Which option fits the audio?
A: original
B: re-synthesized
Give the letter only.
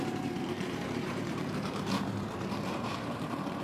B